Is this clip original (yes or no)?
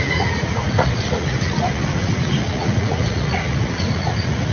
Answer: no